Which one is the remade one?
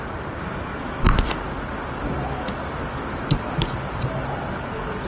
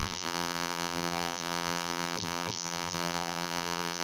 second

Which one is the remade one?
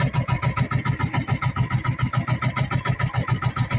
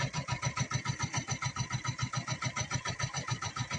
second